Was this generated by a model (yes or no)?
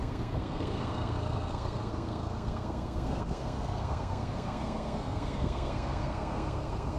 yes